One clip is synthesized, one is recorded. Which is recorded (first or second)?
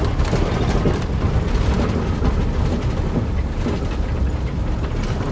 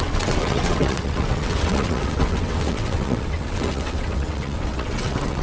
first